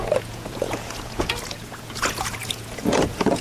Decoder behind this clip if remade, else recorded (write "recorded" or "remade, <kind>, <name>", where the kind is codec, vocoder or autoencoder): remade, vocoder, Vocos